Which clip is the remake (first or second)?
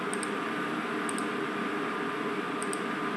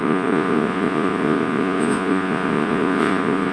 second